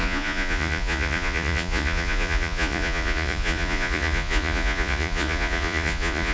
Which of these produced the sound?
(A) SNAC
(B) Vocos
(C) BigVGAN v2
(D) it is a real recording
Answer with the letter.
B